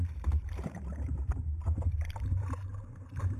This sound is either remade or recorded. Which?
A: remade